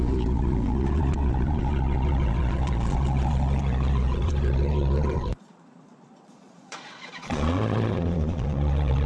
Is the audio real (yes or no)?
no